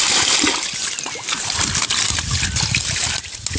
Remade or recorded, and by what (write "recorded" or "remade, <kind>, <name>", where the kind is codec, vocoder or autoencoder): recorded